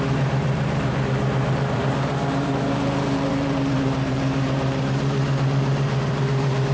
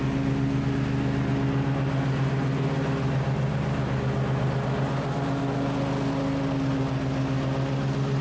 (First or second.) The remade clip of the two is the first